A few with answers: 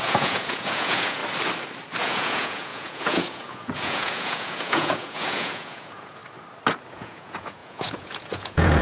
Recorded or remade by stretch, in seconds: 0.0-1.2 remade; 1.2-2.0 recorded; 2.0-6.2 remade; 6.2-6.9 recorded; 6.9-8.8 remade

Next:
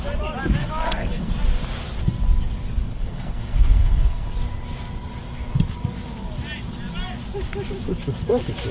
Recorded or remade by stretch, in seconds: 0.0-0.6 recorded; 0.6-1.3 remade; 1.3-2.8 recorded; 2.8-4.3 remade; 4.3-8.7 recorded